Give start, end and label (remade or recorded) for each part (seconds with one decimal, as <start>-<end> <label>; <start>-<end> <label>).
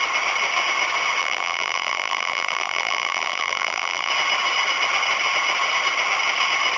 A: 0.0-1.2 recorded; 1.2-4.1 remade; 4.1-6.8 recorded